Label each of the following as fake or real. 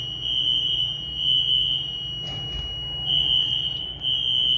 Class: real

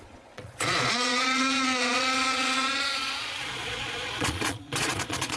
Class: fake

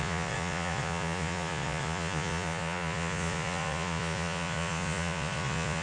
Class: fake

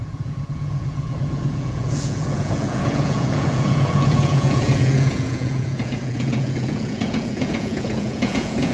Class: fake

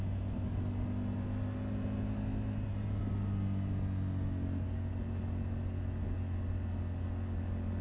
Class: real